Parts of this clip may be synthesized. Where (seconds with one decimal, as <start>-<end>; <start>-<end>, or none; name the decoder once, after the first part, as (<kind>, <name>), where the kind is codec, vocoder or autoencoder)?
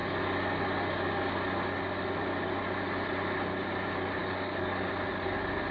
4.2-4.9 (codec, DAC)